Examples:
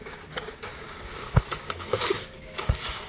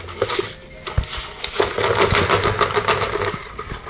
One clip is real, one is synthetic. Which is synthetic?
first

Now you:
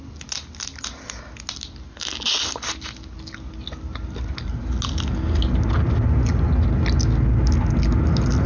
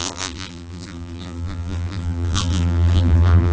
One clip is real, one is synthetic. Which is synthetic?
second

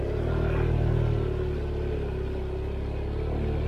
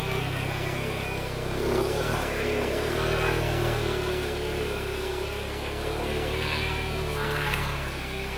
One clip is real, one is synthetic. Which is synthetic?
second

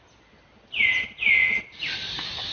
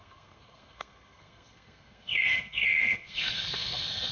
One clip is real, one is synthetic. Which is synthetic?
second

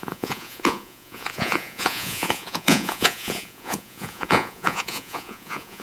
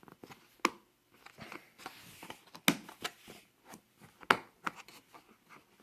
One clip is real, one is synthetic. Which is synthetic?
first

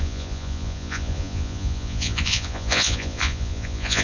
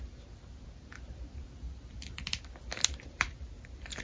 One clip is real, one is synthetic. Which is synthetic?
first